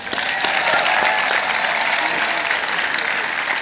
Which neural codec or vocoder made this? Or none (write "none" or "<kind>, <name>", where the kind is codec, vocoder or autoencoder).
none